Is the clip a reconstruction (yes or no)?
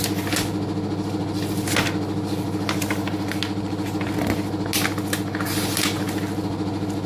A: no